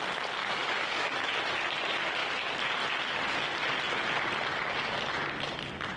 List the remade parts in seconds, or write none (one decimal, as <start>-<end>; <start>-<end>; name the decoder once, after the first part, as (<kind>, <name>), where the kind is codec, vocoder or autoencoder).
0.4-1.3 (codec, DAC)